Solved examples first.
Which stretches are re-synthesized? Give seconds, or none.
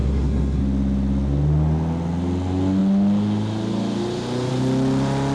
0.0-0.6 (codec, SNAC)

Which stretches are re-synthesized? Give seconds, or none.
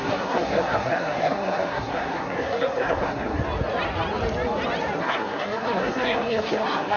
0.0-3.4 (codec, SNAC); 5.0-7.0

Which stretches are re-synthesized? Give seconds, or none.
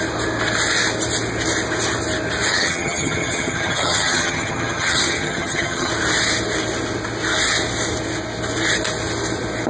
2.5-5.9 (vocoder, HiFi-GAN)